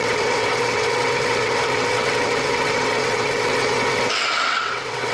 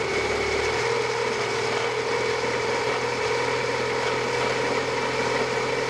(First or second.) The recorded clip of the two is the second